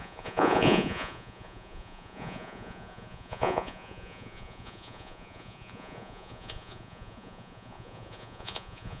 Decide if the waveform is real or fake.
fake